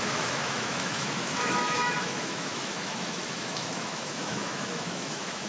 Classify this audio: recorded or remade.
remade